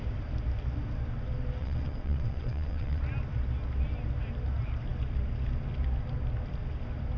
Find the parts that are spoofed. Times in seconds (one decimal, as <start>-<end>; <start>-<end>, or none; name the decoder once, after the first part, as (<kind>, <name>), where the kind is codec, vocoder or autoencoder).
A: 1.6-3.0 (vocoder, WaveNeXt)